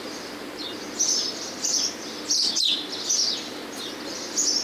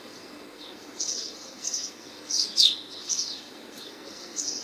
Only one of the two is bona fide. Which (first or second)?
first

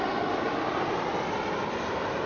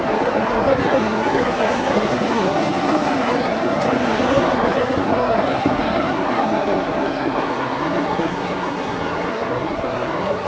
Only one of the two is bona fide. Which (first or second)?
first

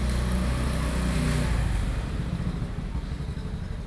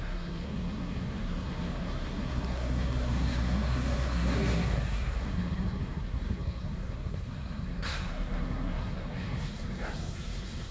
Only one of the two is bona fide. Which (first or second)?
first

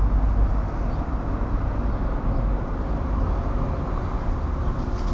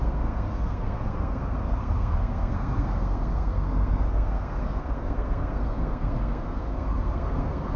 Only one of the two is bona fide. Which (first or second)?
first